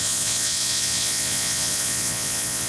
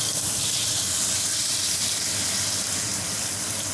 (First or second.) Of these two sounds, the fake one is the first